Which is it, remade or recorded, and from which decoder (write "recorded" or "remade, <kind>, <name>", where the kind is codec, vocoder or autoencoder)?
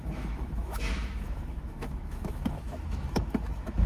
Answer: remade, autoencoder, DAC-VAE